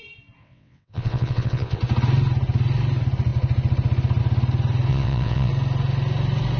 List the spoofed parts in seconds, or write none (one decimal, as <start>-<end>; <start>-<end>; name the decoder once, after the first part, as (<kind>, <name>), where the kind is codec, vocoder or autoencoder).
0.4-1.8 (vocoder, WaveNeXt); 4.9-5.5